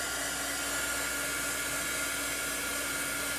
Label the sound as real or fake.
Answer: real